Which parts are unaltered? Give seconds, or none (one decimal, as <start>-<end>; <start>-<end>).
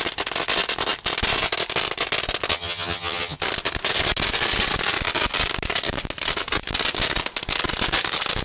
0.0-2.5; 3.4-8.4